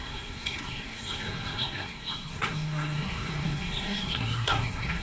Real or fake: fake